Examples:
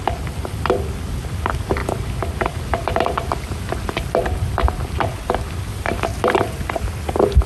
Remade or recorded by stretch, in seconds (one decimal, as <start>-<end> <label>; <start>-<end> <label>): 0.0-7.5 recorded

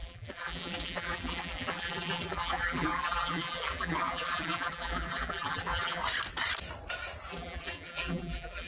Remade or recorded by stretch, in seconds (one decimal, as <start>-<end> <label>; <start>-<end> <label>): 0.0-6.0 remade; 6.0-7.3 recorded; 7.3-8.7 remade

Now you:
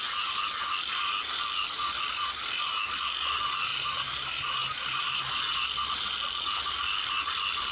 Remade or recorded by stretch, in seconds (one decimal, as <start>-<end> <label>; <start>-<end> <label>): 0.0-3.7 recorded; 3.7-5.4 remade; 5.4-7.7 recorded